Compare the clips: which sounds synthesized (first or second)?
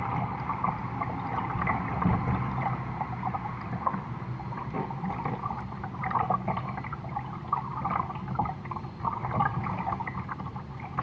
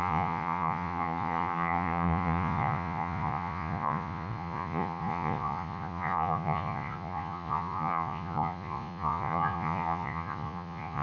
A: second